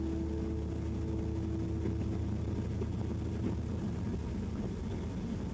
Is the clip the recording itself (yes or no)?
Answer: yes